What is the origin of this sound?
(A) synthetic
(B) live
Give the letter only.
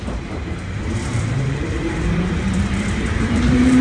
A